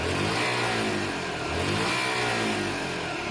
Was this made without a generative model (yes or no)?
yes